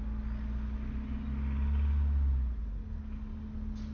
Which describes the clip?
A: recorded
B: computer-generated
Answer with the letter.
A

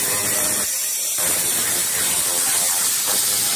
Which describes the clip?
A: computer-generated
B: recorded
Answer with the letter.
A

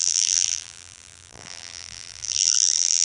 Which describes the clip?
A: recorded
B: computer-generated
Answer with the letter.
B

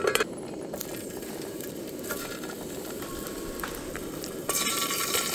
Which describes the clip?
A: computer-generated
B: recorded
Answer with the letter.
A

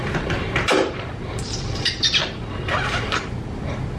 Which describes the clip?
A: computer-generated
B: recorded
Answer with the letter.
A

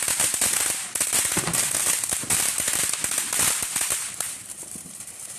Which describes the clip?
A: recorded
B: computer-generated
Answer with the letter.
B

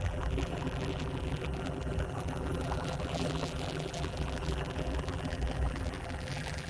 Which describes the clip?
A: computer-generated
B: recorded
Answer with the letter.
A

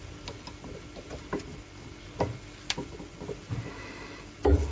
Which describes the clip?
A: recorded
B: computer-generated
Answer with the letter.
B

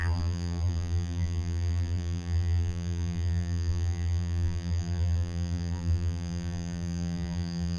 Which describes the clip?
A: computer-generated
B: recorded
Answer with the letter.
A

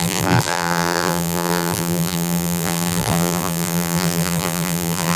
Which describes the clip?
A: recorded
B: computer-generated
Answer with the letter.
B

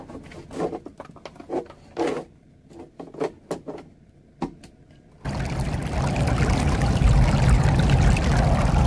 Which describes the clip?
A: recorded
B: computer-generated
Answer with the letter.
A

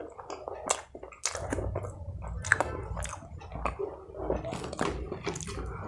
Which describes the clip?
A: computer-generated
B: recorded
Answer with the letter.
B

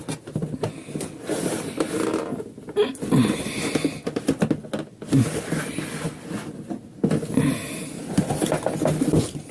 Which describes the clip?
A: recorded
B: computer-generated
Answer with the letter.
A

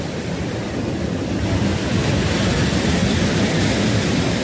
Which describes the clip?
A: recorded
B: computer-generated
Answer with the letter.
A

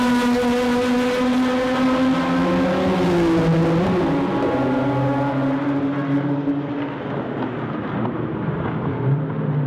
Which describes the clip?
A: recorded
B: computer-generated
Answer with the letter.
A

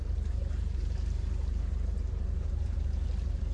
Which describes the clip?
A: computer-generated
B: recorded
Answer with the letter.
A